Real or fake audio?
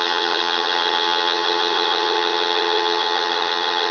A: fake